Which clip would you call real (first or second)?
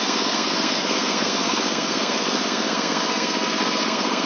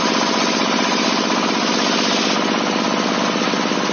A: second